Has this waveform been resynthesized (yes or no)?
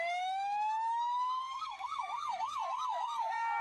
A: yes